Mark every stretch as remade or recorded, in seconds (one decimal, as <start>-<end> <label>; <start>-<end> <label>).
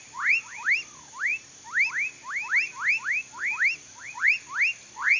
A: 0.0-5.2 recorded